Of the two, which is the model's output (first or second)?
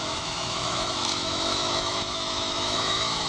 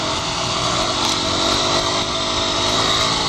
first